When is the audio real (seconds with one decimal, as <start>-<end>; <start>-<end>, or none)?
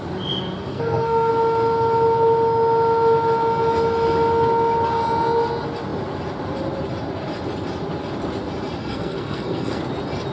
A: 0.0-0.7; 1.3-8.8; 9.8-10.3